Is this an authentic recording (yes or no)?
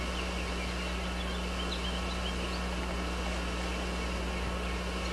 yes